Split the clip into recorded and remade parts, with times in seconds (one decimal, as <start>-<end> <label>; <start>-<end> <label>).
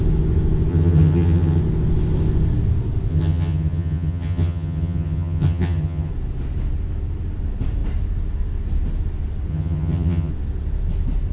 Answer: 0.0-0.7 recorded; 0.7-1.6 remade; 1.6-3.1 recorded; 3.1-6.1 remade; 6.1-9.5 recorded; 9.5-10.3 remade; 10.3-11.3 recorded